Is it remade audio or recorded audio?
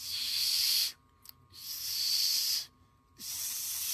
recorded